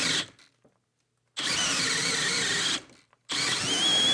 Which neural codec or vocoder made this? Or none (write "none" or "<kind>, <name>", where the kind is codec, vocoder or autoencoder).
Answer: none